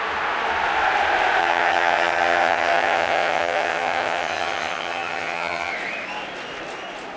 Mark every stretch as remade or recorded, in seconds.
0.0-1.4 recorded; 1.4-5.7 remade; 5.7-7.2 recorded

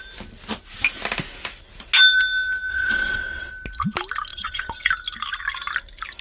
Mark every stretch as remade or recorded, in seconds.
0.0-2.7 recorded; 2.7-3.5 remade; 3.5-4.3 recorded; 4.3-4.9 remade; 4.9-6.2 recorded

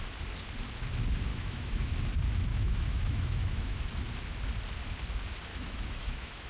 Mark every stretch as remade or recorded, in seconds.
0.0-1.3 recorded; 1.3-1.9 remade; 1.9-2.5 recorded; 2.5-3.9 remade; 3.9-5.5 recorded; 5.5-6.5 remade

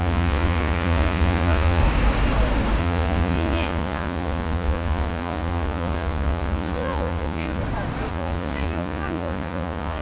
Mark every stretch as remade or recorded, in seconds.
0.0-1.8 remade; 1.8-2.8 recorded; 2.8-7.6 remade; 7.6-8.1 recorded; 8.1-10.0 remade

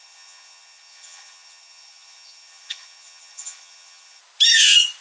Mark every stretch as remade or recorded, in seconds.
0.0-4.2 remade; 4.2-5.0 recorded